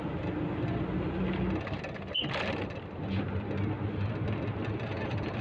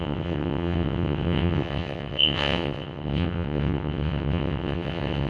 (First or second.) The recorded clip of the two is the first